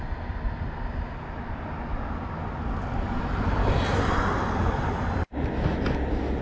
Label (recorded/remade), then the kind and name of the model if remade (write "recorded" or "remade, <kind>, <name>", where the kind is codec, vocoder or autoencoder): recorded